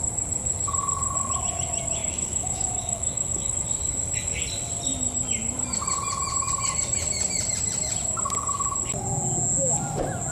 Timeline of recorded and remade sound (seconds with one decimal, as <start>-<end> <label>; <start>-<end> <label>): 0.0-2.0 recorded; 2.0-3.5 remade; 3.5-10.3 recorded